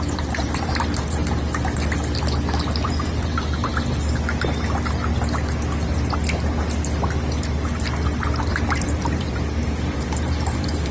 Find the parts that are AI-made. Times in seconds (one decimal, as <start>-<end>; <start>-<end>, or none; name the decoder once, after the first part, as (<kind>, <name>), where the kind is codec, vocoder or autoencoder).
0.0-1.2 (vocoder, BigVGAN v2); 2.9-3.7; 8.7-10.9